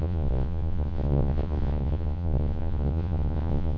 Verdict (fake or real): fake